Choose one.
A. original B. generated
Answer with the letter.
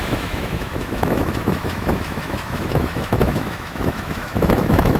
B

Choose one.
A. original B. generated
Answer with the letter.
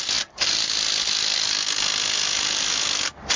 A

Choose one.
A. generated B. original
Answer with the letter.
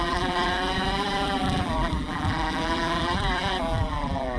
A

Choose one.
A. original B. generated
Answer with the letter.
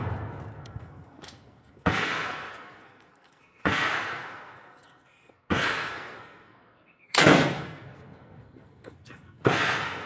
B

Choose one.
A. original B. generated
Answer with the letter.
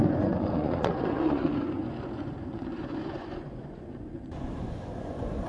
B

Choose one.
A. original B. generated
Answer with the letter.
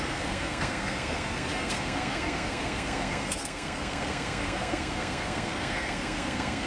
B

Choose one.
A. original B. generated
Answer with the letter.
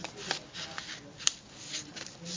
A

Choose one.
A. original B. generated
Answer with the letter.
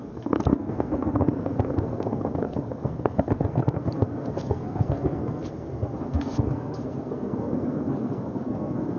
B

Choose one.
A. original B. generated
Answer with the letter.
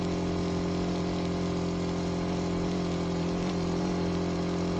A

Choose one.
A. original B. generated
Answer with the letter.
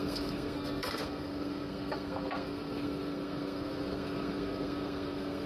B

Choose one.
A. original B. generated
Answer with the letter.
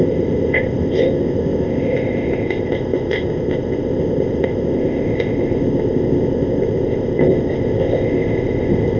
B